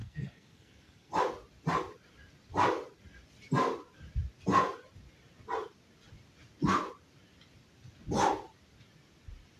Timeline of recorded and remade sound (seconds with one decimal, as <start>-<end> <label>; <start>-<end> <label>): 0.0-1.1 remade; 1.1-9.6 recorded